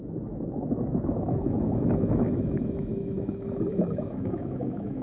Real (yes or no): no